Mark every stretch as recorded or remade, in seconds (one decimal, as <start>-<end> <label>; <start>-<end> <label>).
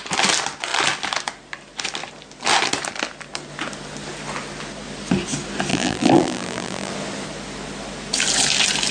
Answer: 0.0-5.7 recorded; 5.7-6.9 remade; 6.9-8.9 recorded